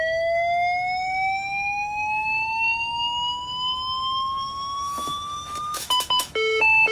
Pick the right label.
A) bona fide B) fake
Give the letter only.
B